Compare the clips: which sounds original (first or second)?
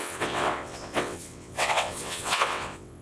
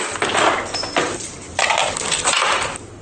second